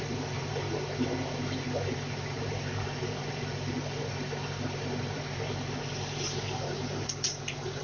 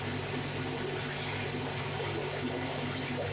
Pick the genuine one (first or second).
second